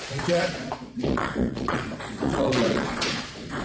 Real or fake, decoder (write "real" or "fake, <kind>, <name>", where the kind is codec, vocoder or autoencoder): fake, vocoder, Vocos